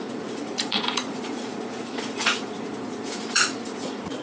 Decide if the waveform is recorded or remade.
remade